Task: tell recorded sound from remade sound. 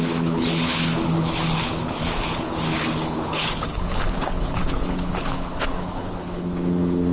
remade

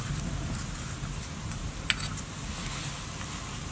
recorded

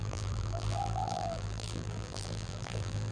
remade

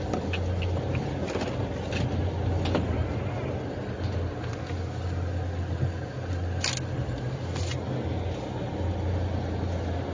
recorded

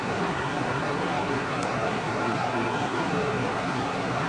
remade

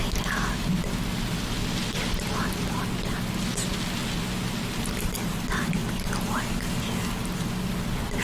recorded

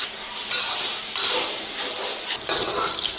recorded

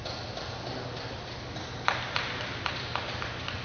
recorded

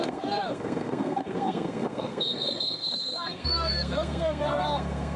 remade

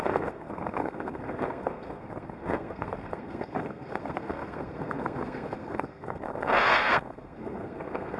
remade